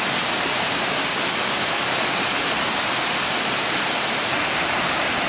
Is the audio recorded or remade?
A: recorded